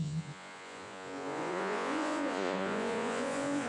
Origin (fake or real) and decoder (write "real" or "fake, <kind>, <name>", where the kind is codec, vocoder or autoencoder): fake, vocoder, Vocos